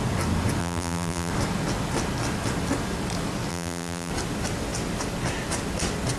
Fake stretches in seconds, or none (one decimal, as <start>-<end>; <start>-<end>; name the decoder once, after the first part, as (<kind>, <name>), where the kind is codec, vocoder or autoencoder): 0.6-1.3 (vocoder, BigVGAN v2); 3.5-4.1